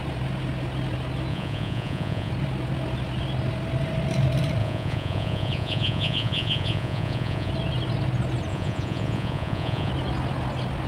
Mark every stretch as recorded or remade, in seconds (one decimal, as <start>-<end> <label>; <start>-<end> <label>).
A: 0.0-1.3 recorded; 1.3-2.3 remade; 2.3-4.6 recorded; 4.6-7.5 remade; 7.5-8.5 recorded; 8.5-9.9 remade; 9.9-10.9 recorded